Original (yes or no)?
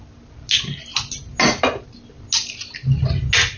yes